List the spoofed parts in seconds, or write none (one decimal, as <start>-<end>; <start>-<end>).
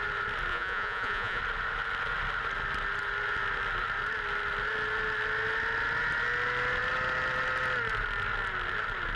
0.5-1.4